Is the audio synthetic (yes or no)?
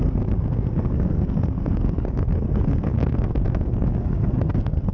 yes